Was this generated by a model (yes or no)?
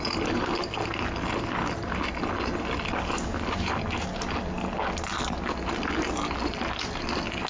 no